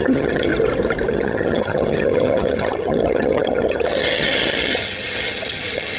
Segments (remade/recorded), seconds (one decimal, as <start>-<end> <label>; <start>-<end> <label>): 0.0-0.5 remade; 0.5-1.1 recorded; 1.1-6.0 remade

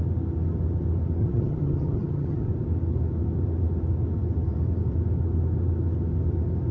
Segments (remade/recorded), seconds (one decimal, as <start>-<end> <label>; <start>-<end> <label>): 0.0-1.2 recorded; 1.2-2.5 remade; 2.5-6.7 recorded